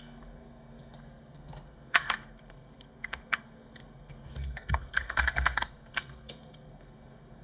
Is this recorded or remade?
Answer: remade